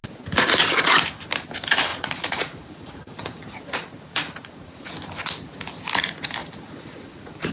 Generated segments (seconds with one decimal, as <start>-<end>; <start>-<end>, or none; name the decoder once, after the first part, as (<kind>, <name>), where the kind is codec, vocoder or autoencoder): 1.9-4.9 (vocoder, Vocos); 6.4-7.5